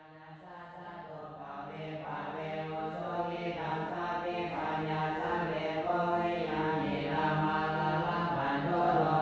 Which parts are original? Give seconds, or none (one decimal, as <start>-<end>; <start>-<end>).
0.0-3.2; 3.9-5.0; 7.1-9.2